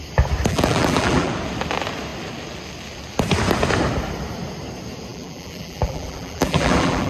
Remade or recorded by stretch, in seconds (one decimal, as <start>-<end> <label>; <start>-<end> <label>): 0.0-0.5 recorded; 0.5-1.3 remade; 1.3-5.1 recorded; 5.1-7.1 remade